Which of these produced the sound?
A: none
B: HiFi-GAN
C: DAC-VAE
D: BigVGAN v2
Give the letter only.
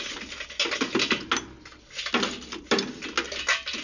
A